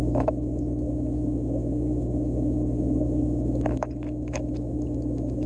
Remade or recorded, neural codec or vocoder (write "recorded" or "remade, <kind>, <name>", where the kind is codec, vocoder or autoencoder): remade, autoencoder, DAC-VAE